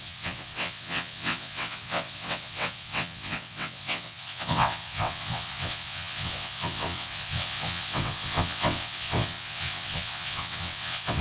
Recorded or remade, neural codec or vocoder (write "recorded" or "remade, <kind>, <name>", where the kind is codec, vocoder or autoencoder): remade, vocoder, WaveNeXt